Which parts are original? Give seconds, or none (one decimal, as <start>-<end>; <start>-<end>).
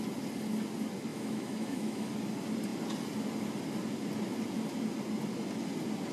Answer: 0.0-1.1; 2.1-6.1